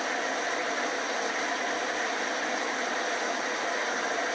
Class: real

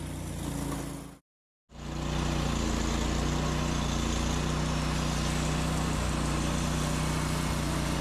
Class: real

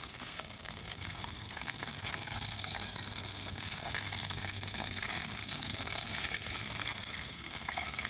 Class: fake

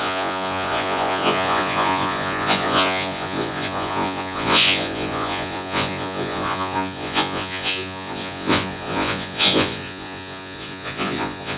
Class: fake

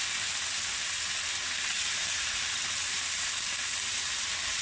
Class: real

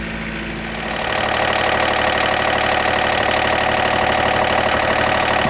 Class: real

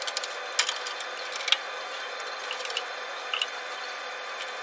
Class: real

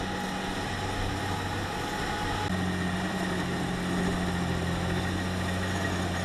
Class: real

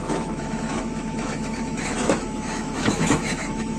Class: fake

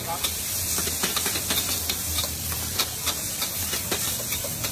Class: real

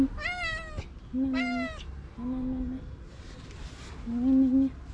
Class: real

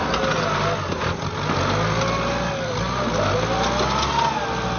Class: real